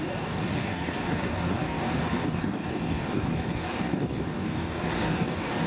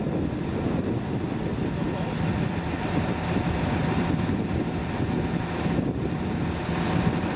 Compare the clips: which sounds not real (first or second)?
first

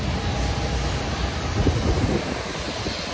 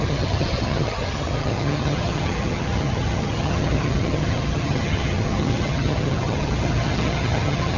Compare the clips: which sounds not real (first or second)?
second